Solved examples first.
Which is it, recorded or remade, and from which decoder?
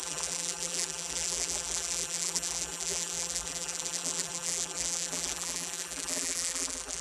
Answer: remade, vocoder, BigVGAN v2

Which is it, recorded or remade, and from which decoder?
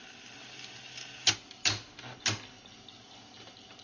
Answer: recorded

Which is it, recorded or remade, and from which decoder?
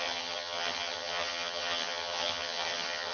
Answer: remade, vocoder, HiFi-GAN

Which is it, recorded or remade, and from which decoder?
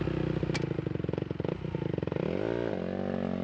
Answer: recorded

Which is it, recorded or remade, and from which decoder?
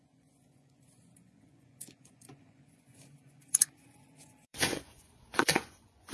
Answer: remade, vocoder, Vocos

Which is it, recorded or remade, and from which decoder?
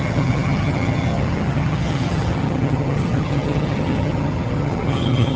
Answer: remade, vocoder, HiFi-GAN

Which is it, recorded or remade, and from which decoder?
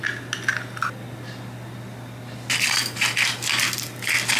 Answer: recorded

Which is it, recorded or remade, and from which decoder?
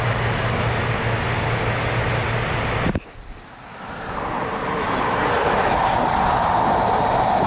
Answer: recorded